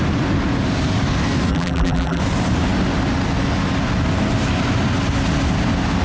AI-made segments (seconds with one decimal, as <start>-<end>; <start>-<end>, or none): 1.5-2.2